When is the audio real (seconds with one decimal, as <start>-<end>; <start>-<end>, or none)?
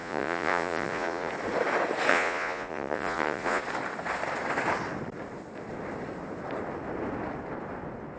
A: 1.3-2.1; 3.6-8.2